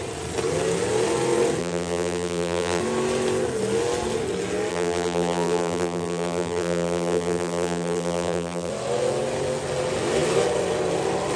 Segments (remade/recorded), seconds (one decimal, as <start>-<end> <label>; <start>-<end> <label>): 0.0-1.6 recorded; 1.6-2.8 remade; 2.8-4.7 recorded; 4.7-8.7 remade; 8.7-11.4 recorded